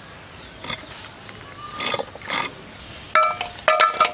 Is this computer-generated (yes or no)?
no